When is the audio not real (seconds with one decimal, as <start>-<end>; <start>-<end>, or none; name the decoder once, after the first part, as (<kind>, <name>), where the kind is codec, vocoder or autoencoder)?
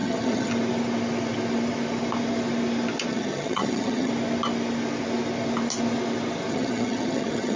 0.0-0.5 (vocoder, HiFi-GAN); 3.1-4.1; 6.5-7.6